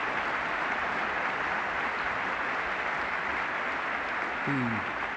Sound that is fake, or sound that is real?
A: real